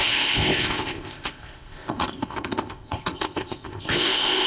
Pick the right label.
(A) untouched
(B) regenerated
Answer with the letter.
B